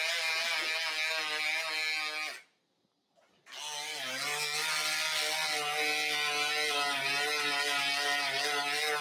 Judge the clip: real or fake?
real